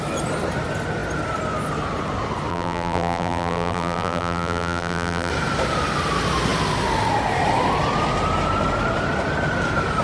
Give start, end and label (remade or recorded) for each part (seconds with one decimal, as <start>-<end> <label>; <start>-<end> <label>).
0.0-2.5 recorded; 2.5-5.3 remade; 5.3-10.0 recorded